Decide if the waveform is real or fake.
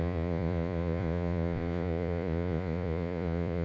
fake